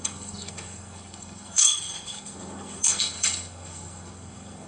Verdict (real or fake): fake